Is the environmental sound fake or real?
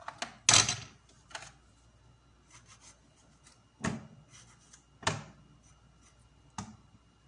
real